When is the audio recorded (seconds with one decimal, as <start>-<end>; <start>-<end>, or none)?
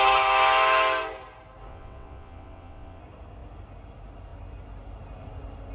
0.0-1.7; 3.0-5.7